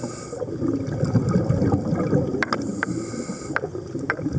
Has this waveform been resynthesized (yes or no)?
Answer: no